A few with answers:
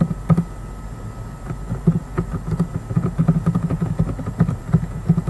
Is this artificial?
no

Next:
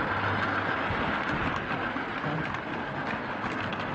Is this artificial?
no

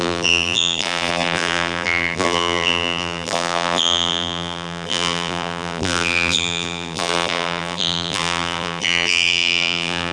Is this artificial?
yes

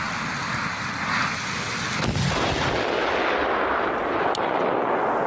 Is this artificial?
no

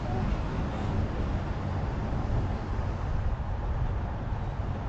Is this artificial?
no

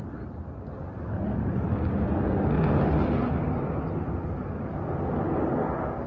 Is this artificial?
no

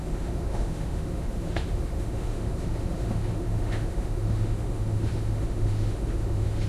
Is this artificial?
yes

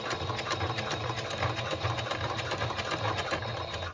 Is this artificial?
no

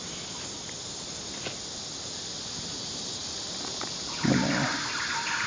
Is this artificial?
no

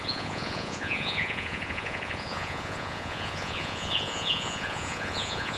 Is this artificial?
yes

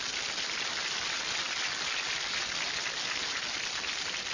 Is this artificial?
no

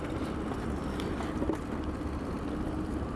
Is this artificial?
yes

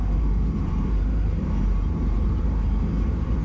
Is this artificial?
yes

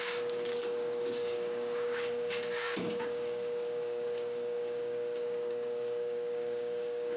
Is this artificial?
yes